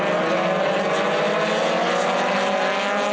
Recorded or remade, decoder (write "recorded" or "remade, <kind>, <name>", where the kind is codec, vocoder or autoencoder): recorded